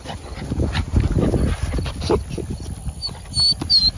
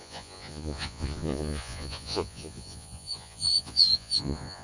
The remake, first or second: second